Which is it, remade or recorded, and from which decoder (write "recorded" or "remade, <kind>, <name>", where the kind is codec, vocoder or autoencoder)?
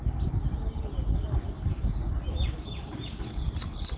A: recorded